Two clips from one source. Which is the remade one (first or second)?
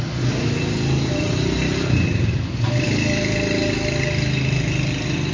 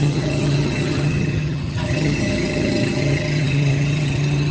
second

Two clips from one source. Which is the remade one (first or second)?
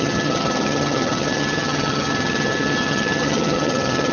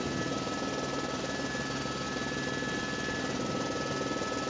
first